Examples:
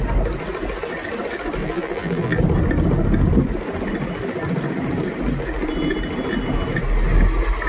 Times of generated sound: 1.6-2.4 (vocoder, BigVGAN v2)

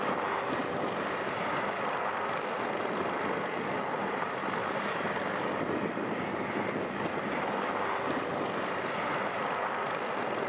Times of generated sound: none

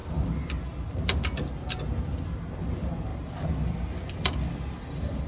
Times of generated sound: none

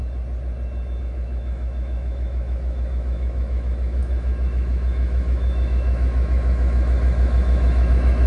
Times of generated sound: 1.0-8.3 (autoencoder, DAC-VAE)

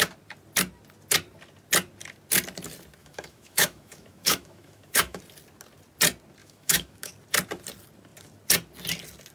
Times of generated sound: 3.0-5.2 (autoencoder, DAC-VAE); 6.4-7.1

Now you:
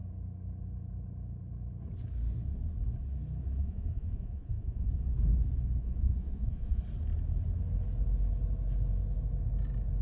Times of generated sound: 3.6-4.9 (vocoder, Vocos); 5.8-6.8